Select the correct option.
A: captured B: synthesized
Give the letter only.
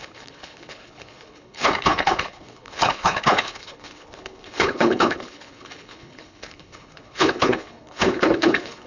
B